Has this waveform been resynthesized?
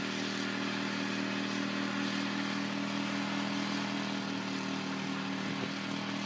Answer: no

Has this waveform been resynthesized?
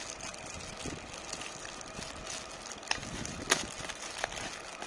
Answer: no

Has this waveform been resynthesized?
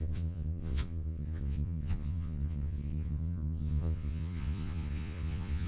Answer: yes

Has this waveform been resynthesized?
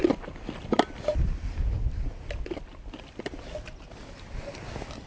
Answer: no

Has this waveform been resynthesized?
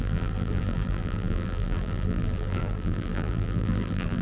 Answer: yes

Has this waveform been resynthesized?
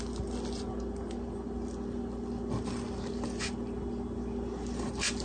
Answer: no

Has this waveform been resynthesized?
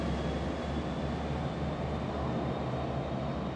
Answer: no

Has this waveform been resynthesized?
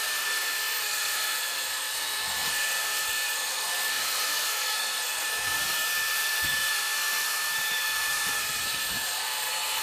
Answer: yes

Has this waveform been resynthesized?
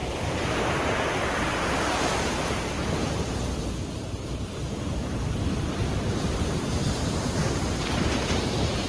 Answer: yes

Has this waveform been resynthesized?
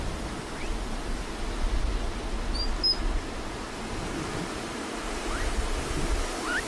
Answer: no